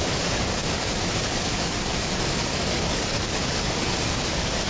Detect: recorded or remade remade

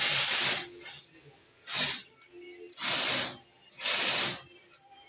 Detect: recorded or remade recorded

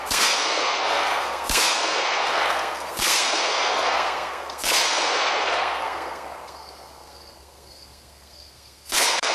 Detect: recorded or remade remade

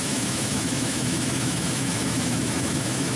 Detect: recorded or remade remade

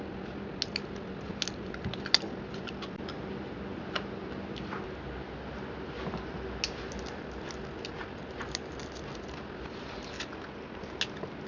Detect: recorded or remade recorded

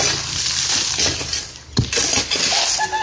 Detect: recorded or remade recorded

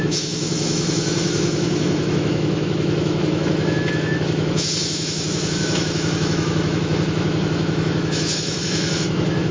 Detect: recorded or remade remade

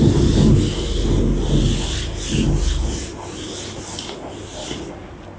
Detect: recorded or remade recorded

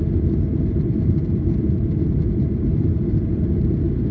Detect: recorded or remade recorded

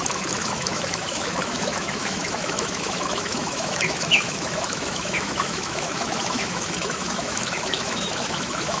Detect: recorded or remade remade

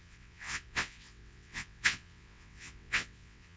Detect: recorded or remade remade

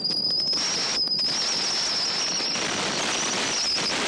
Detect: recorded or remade recorded